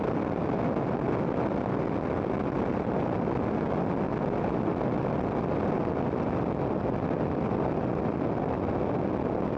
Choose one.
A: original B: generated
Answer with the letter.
A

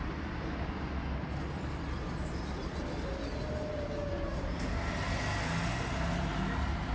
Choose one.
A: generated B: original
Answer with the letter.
B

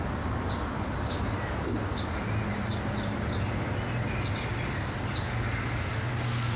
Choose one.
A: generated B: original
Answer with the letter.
B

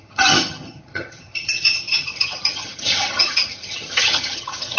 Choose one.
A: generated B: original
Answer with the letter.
A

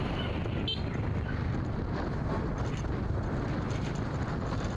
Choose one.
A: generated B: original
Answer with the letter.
B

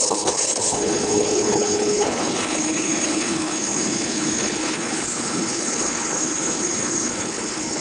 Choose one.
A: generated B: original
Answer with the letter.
A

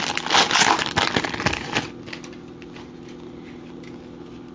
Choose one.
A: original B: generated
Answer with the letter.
A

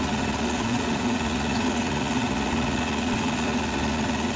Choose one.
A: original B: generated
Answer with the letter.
B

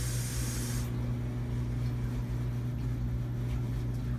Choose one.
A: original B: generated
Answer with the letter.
A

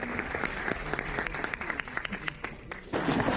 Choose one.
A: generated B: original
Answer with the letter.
B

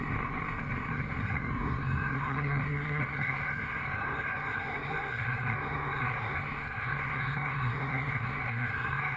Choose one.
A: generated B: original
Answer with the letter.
A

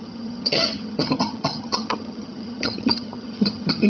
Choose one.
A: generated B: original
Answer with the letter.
A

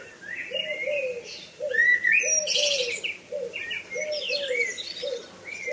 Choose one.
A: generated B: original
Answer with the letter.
B